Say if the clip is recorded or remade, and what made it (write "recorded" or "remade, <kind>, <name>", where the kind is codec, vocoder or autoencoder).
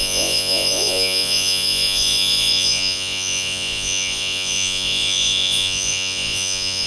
remade, vocoder, Vocos